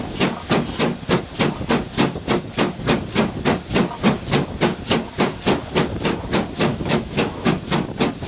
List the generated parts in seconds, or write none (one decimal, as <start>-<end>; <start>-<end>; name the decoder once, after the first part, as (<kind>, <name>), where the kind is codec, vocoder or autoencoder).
6.7-7.5 (autoencoder, DAC-VAE)